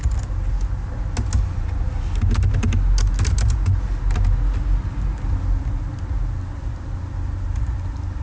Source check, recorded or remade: recorded